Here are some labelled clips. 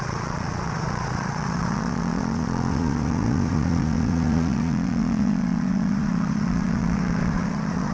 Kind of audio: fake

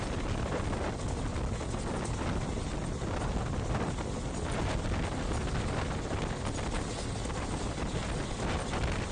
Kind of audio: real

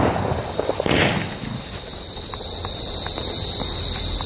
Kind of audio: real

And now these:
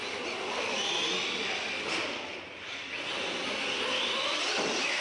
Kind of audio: real